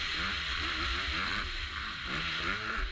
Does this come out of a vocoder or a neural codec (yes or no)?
no